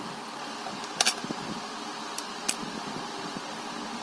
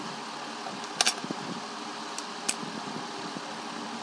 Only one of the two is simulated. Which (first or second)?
first